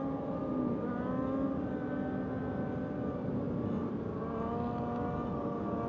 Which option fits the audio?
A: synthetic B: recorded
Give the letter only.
B